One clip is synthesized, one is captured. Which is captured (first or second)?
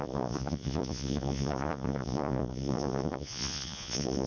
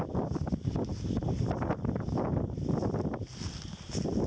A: second